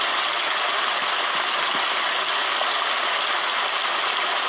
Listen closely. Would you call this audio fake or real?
real